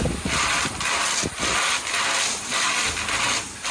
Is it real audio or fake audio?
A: real